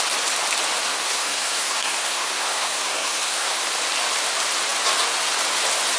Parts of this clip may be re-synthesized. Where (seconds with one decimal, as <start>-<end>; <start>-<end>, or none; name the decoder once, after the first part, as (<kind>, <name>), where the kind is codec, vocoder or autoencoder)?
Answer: 0.9-3.6 (codec, SNAC)